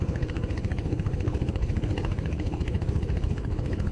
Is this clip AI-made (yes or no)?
yes